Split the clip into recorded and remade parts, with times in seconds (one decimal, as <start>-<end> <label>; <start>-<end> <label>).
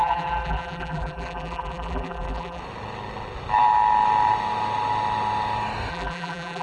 0.0-2.6 remade; 2.6-5.9 recorded; 5.9-6.6 remade